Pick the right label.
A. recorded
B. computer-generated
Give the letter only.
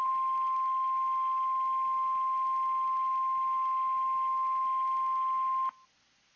A